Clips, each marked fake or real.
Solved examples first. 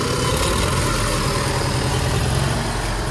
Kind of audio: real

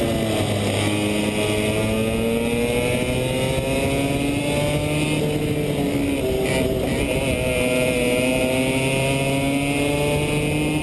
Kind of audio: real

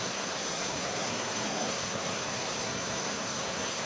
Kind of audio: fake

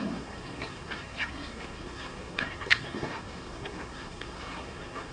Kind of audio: fake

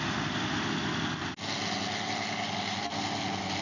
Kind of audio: real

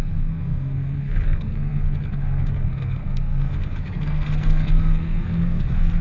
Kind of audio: fake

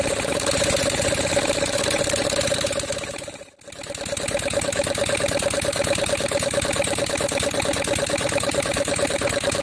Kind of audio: real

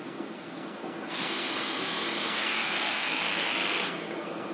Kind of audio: fake